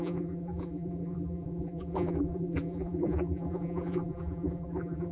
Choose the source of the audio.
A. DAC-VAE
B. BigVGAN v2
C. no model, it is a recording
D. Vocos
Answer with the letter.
B